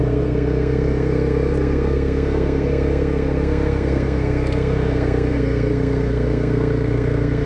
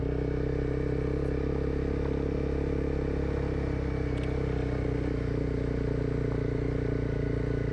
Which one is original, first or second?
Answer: second